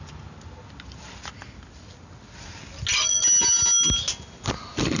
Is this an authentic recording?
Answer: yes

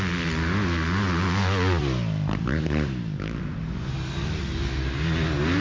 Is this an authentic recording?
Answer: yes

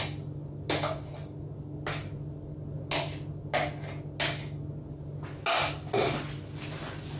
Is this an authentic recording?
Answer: yes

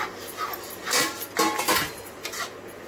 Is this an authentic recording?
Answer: yes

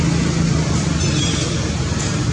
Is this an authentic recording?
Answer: yes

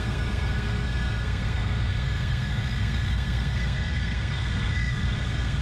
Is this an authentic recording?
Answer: no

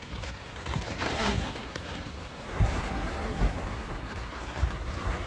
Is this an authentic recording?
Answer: no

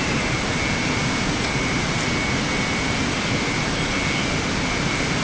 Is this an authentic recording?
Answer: yes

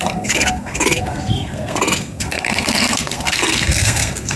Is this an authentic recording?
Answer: no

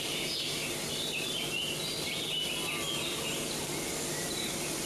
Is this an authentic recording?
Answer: yes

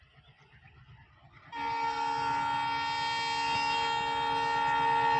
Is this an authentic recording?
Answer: yes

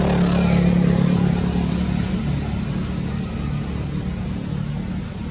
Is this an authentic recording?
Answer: yes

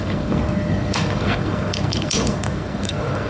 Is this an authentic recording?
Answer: no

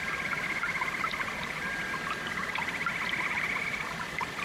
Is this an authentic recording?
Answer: yes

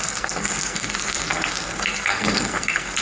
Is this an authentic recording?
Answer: no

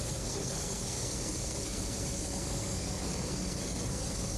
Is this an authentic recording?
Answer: no